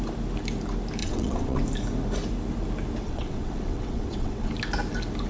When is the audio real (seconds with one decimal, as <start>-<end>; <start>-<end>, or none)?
0.0-1.0; 1.6-3.0; 4.5-5.3